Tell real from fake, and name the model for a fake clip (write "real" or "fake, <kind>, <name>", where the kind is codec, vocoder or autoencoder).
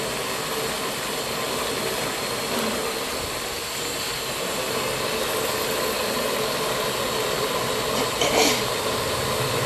real